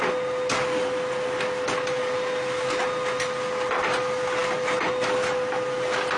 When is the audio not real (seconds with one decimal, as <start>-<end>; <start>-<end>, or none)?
none